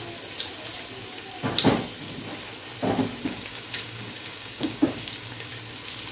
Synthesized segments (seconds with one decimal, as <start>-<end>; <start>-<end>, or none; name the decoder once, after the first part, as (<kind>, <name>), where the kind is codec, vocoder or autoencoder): 3.2-5.5 (codec, DAC)